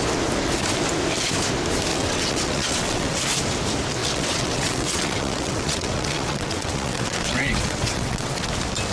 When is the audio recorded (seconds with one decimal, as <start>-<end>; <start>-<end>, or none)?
0.0-1.9; 3.2-4.0; 8.5-8.9